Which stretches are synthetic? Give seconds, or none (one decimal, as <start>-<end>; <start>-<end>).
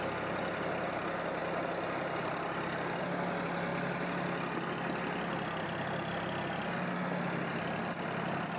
none